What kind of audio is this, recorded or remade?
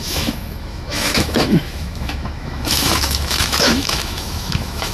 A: remade